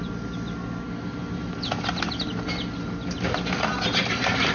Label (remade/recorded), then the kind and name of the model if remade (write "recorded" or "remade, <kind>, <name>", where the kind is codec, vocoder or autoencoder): recorded